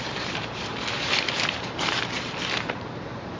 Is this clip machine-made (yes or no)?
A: yes